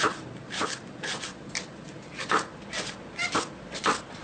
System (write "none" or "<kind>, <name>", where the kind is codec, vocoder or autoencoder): none